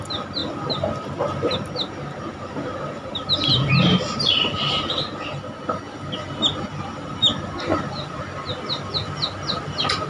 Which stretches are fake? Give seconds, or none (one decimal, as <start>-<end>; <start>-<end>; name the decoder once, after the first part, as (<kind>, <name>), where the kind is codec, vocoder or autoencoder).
none